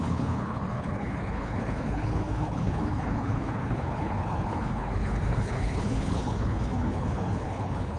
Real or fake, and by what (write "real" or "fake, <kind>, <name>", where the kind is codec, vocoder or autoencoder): fake, codec, HILCodec